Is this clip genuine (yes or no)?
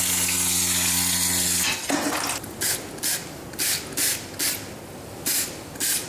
yes